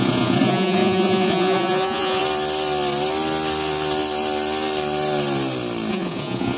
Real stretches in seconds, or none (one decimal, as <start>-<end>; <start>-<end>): 2.2-5.9